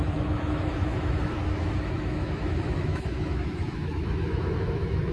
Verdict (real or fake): fake